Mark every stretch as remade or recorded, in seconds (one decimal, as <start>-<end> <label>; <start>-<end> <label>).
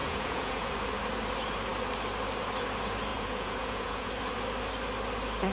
0.0-0.7 remade; 0.7-3.1 recorded; 3.1-4.1 remade; 4.1-5.5 recorded